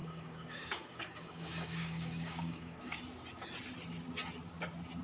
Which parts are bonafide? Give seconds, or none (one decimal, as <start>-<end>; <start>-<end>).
3.0-5.0